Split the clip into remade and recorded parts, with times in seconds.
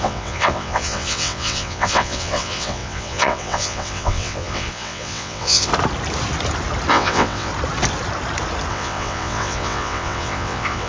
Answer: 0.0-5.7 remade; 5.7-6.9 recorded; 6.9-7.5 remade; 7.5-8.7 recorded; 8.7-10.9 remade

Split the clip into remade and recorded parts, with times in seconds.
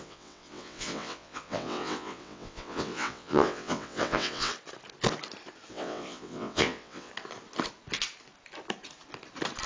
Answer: 0.0-4.5 remade; 4.5-5.7 recorded; 5.7-7.1 remade; 7.1-9.7 recorded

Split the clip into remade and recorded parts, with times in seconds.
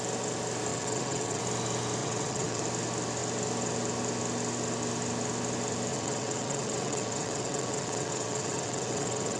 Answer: 0.0-0.7 recorded; 0.7-1.4 remade; 1.4-2.0 recorded; 2.0-2.6 remade; 2.6-5.9 recorded; 5.9-9.4 remade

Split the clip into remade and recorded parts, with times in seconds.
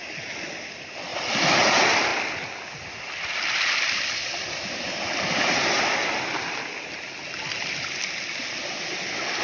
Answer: 0.0-9.4 recorded